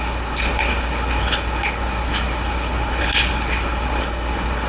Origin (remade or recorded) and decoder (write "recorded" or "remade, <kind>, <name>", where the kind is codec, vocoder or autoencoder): remade, codec, HILCodec